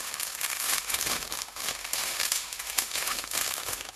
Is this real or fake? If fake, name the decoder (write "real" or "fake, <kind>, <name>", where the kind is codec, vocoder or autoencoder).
fake, autoencoder, DAC-VAE